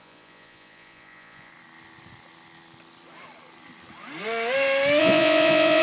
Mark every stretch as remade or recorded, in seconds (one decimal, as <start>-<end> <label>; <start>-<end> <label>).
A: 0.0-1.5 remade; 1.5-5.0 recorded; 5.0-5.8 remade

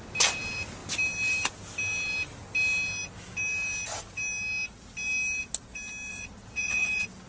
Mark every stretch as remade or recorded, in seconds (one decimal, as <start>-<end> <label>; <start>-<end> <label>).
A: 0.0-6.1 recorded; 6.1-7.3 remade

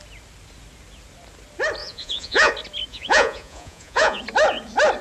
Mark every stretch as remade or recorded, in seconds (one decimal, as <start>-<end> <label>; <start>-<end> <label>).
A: 0.0-1.8 recorded; 1.8-2.5 remade; 2.5-2.9 recorded; 2.9-4.2 remade; 4.2-5.0 recorded

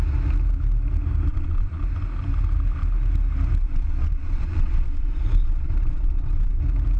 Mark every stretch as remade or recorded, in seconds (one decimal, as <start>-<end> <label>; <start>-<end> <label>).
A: 0.0-1.3 recorded; 1.3-1.8 remade; 1.8-3.6 recorded; 3.6-6.6 remade; 6.6-7.0 recorded